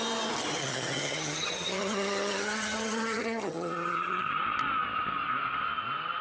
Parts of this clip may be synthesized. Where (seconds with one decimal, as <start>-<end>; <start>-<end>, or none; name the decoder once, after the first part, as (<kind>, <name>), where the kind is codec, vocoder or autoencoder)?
0.6-4.3 (vocoder, HiFi-GAN)